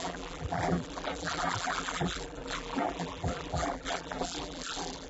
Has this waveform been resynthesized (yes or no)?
yes